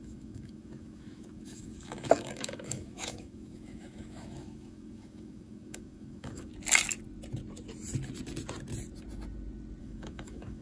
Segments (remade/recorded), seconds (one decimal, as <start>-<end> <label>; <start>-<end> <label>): 0.0-6.5 remade; 6.5-9.8 recorded; 9.8-10.6 remade